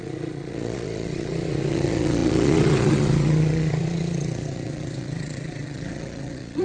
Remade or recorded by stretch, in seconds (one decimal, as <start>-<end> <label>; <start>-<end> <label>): 0.0-6.6 remade